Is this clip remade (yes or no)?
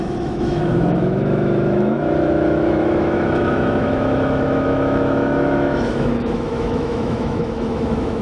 yes